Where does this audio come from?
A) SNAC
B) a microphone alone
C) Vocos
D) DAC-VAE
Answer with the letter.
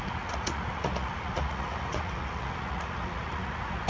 C